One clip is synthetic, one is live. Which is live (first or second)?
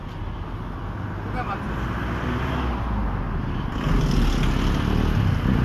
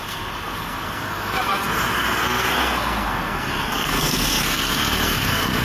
first